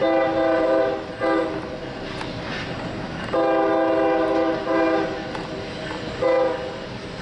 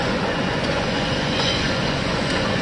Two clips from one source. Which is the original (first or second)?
first